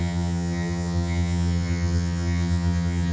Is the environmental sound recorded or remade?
remade